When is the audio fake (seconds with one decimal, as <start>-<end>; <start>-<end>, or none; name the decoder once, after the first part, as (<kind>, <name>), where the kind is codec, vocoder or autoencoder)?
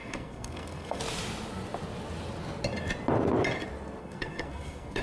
0.0-1.0 (codec, SNAC); 4.0-5.0